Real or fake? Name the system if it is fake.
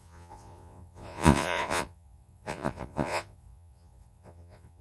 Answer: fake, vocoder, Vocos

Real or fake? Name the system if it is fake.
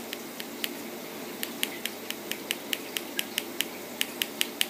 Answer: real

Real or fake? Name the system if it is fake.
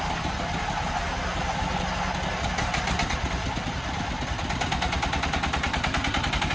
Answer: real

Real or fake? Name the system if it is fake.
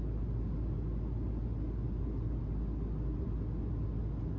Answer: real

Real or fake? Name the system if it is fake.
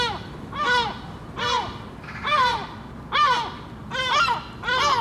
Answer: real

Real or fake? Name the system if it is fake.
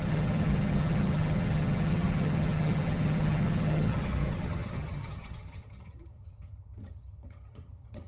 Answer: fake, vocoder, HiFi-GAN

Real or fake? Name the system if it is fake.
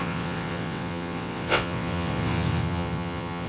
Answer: fake, vocoder, WaveNeXt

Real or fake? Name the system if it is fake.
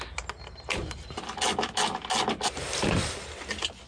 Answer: real